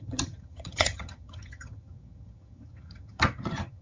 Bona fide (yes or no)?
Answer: no